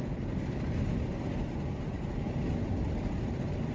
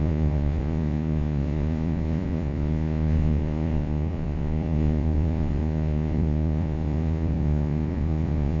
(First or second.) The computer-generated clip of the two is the second